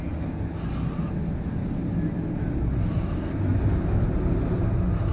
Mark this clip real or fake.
real